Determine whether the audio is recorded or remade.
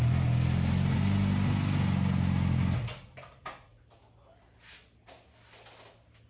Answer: recorded